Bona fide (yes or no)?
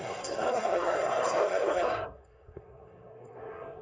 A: no